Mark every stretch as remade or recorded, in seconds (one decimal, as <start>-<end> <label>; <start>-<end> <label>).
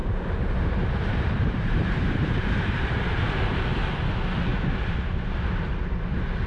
0.0-3.9 remade; 3.9-4.5 recorded; 4.5-6.1 remade; 6.1-6.5 recorded